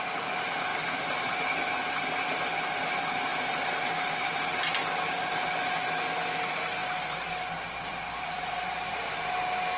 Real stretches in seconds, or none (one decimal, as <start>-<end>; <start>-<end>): 0.0-0.7; 1.3-6.8; 9.0-9.8